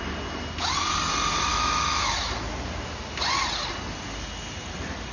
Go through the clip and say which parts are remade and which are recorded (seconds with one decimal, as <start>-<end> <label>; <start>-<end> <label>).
0.0-1.5 recorded; 1.5-2.5 remade; 2.5-5.1 recorded